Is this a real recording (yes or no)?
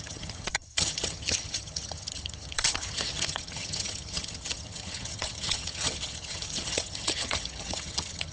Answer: no